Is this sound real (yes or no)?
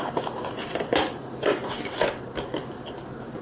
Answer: yes